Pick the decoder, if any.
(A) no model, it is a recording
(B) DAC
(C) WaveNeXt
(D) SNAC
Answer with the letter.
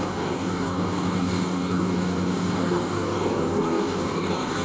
B